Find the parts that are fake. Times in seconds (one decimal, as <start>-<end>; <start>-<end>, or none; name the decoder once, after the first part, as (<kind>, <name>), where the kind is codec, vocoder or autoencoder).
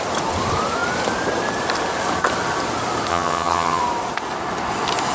3.1-3.8 (vocoder, HiFi-GAN)